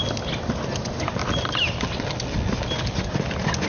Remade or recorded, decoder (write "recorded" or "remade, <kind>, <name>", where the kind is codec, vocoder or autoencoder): recorded